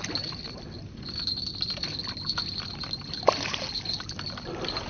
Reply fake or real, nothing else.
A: real